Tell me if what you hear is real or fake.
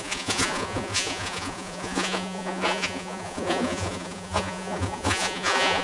fake